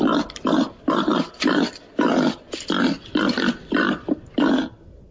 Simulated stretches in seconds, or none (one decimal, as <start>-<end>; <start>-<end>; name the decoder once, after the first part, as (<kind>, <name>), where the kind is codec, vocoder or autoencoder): none